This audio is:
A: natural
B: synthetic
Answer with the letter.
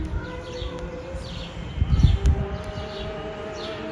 A